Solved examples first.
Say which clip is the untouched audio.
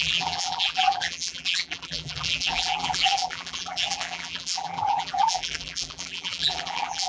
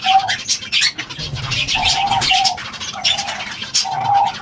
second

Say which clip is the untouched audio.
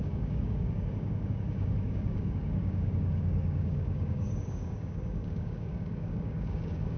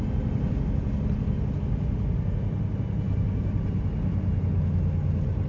second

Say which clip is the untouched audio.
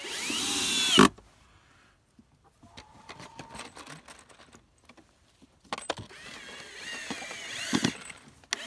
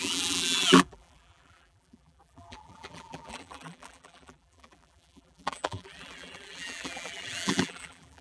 first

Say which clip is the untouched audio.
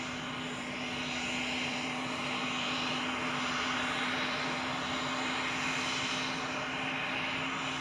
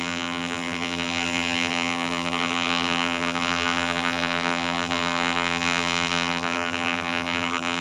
first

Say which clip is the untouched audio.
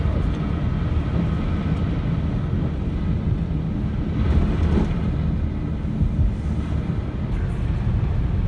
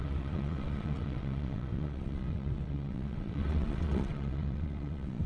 first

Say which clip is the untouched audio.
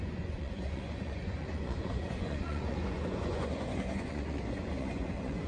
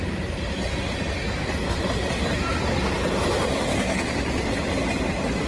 second